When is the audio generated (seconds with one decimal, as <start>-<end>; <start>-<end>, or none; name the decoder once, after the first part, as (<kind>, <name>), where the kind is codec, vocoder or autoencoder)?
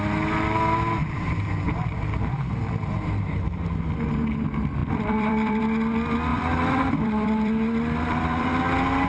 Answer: 4.8-5.6 (vocoder, BigVGAN v2); 6.3-8.6